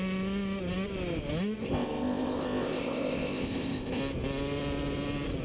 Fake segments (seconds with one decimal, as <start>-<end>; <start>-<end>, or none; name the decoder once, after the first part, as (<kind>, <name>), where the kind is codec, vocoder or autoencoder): 1.6-4.0 (codec, ZipCodec)